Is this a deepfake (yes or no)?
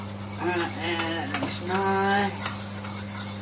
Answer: no